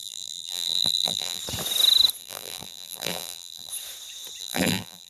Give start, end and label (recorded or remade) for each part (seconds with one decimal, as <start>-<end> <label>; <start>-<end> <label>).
0.0-1.4 remade; 1.4-2.2 recorded; 2.2-3.7 remade; 3.7-4.4 recorded; 4.4-5.1 remade